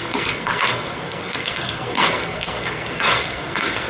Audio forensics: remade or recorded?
remade